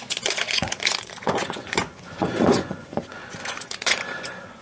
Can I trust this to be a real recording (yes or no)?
no